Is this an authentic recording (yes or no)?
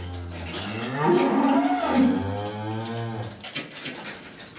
yes